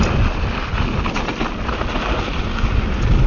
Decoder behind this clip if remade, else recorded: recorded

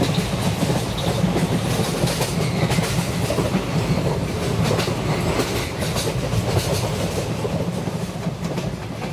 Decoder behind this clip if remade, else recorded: recorded